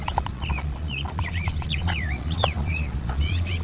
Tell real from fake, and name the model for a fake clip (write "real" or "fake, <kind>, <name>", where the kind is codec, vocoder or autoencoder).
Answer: fake, vocoder, Vocos